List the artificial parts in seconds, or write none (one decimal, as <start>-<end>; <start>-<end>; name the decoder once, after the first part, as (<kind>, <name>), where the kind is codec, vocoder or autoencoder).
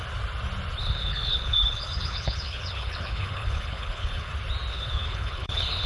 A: 0.8-4.3 (codec, HILCodec); 4.7-5.9